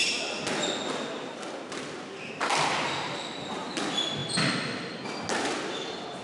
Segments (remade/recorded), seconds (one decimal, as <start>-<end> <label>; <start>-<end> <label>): 0.0-6.2 recorded